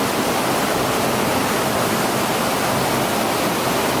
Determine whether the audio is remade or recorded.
recorded